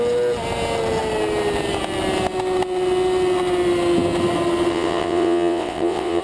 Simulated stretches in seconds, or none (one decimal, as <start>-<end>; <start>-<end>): 4.7-6.2